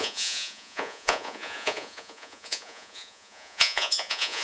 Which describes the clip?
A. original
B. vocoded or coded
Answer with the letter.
B